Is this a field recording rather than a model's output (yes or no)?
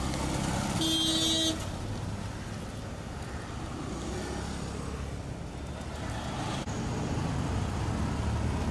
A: yes